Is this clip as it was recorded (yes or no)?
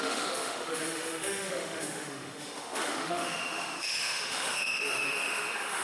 no